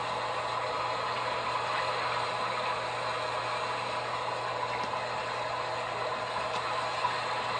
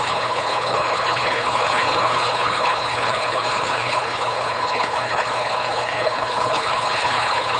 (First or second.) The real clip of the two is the first